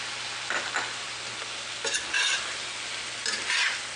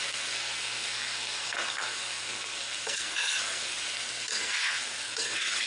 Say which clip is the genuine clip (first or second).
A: first